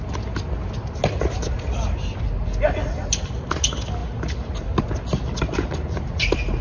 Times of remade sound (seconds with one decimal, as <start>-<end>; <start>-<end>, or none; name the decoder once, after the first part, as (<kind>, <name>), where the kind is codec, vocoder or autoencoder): none